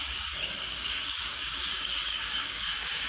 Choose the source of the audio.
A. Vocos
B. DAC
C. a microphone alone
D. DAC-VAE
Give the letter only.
B